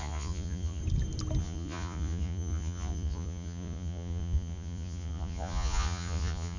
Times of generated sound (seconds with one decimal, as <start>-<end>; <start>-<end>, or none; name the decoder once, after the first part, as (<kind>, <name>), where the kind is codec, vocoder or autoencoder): 0.0-0.8 (vocoder, Vocos); 1.4-6.6